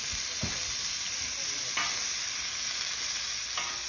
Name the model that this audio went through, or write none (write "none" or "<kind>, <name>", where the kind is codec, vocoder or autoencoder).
none